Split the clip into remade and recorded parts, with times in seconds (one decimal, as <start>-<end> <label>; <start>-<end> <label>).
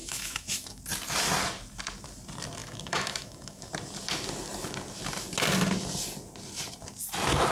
0.0-0.8 remade; 0.8-2.6 recorded; 2.6-3.7 remade; 3.7-7.5 recorded